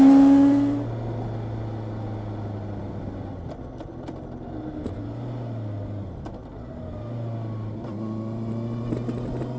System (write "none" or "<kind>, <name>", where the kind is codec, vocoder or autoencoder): none